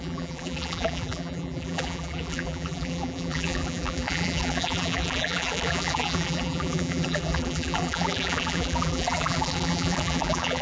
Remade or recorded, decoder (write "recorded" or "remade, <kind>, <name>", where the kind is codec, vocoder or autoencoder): remade, vocoder, BigVGAN v2